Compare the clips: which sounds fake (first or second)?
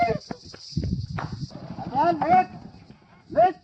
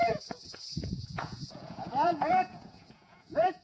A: second